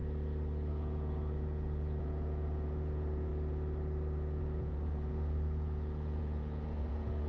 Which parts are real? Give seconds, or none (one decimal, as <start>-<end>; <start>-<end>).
0.0-0.7; 3.3-4.4